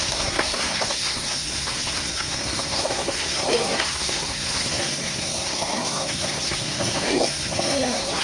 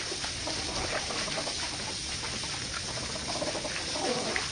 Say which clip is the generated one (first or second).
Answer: first